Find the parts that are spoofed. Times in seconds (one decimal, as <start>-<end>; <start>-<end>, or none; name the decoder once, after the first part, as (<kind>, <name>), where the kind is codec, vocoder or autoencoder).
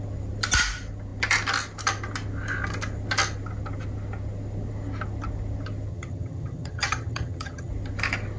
5.9-7.7 (vocoder, HiFi-GAN)